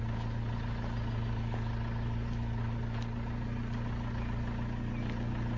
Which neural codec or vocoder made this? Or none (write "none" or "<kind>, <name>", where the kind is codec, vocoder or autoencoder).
none